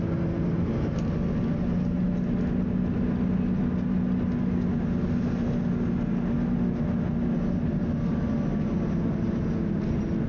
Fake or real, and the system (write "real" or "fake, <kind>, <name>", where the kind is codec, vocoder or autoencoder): real